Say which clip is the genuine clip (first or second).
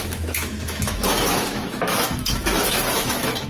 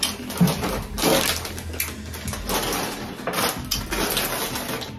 second